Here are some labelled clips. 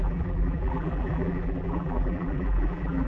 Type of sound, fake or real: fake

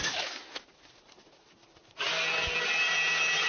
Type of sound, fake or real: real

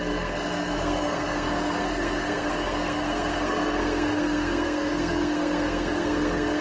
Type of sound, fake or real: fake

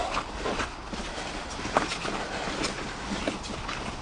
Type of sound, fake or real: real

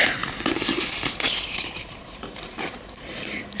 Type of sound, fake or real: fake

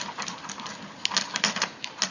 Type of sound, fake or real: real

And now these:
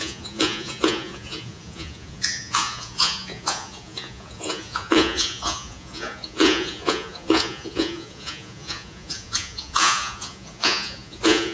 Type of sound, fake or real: fake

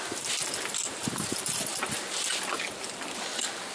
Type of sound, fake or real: real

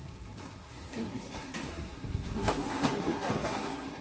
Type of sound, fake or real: fake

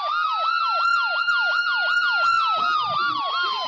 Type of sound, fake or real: real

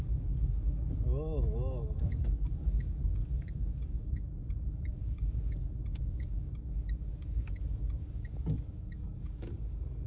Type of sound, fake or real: fake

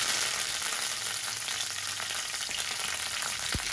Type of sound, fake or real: real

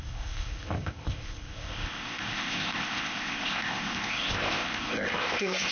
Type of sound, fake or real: fake